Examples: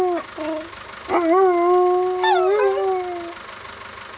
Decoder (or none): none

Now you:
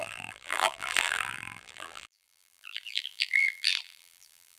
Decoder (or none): vocoder, BigVGAN v2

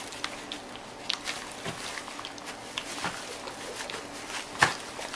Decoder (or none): none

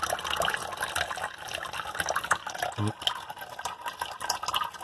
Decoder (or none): none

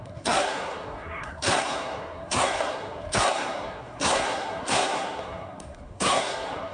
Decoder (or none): codec, SNAC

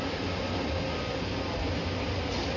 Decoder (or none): none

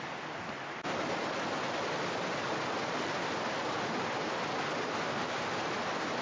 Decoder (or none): none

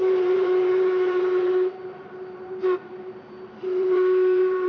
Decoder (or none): vocoder, BigVGAN v2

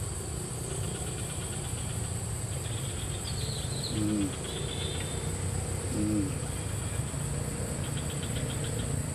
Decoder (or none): none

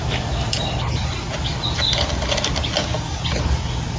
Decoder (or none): none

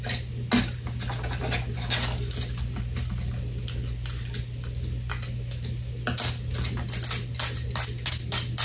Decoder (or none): none